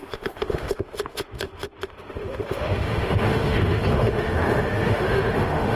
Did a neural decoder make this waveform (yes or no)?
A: yes